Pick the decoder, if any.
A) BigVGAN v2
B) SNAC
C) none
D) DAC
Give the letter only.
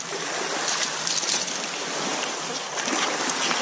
C